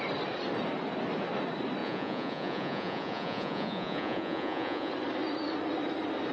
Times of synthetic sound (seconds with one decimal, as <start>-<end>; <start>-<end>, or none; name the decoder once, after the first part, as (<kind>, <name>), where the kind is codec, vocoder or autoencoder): 1.8-4.9 (vocoder, Vocos)